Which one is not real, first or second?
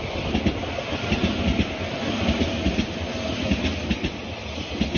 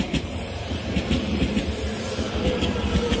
second